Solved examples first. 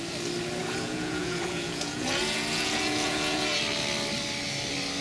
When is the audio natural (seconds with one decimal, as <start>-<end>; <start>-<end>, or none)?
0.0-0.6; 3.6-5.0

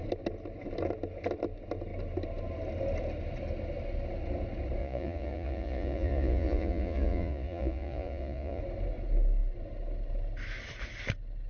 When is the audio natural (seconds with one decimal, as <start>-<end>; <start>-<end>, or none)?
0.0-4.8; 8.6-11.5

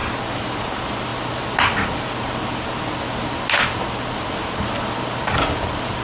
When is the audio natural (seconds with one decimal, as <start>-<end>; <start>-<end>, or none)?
0.0-6.0